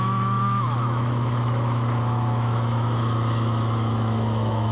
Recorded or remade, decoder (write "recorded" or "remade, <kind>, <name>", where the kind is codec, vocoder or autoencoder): remade, autoencoder, DAC-VAE